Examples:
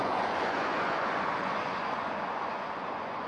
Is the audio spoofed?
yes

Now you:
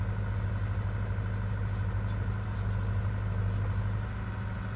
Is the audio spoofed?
no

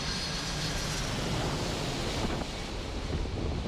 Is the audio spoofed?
no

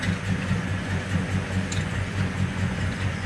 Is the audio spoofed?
yes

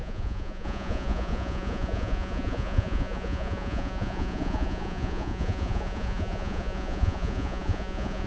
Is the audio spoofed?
yes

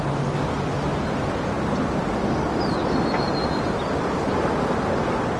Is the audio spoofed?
no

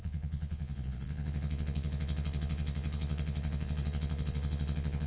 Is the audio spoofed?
yes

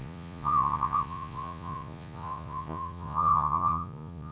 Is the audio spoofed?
yes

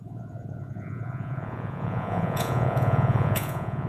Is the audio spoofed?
yes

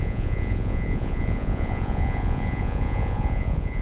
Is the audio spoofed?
yes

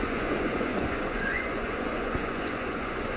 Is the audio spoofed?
yes